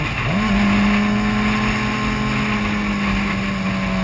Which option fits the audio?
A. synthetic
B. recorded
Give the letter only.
B